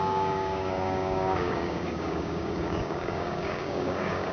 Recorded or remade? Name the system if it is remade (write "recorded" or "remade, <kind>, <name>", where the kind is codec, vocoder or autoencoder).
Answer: remade, codec, DAC